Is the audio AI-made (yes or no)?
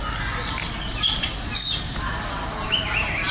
no